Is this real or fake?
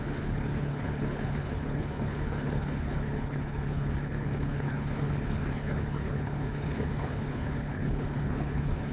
fake